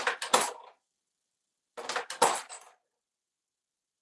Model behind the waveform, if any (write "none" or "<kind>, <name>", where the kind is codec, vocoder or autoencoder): none